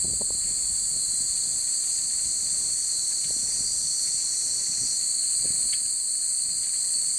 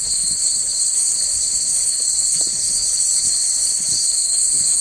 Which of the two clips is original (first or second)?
first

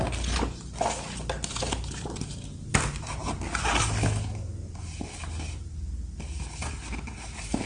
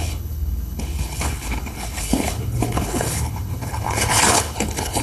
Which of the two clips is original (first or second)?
first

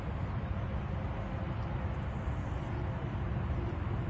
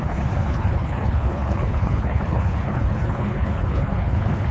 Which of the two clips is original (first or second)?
first